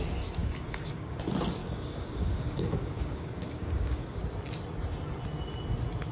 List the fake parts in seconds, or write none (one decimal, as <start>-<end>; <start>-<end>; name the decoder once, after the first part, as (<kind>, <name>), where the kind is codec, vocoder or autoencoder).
0.4-1.2 (codec, DAC); 1.6-4.2